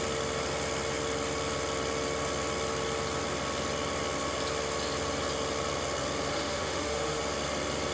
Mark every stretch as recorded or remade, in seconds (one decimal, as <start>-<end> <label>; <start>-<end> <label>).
0.0-6.3 recorded; 6.3-7.2 remade; 7.2-7.9 recorded